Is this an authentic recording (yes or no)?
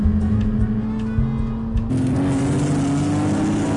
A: yes